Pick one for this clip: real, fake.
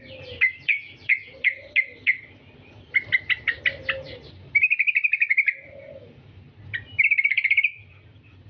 real